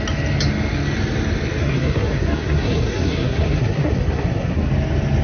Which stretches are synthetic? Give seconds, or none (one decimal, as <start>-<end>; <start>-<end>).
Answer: 1.6-4.7